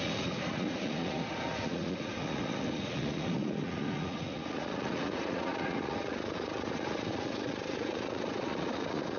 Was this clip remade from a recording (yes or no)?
yes